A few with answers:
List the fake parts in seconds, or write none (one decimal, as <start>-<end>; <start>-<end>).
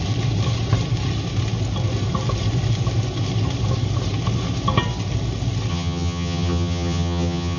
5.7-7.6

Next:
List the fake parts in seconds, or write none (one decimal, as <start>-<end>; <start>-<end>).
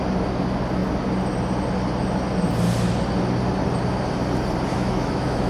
4.7-5.5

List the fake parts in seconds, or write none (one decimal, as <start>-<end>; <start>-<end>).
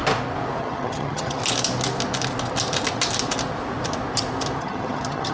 0.6-1.4; 4.6-5.3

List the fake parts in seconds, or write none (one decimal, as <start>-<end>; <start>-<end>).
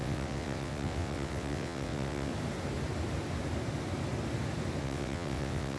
0.0-2.3; 4.8-5.8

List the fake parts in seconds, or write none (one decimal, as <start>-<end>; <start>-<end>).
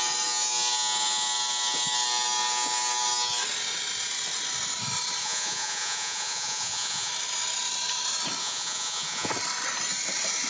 5.2-7.1; 8.4-9.3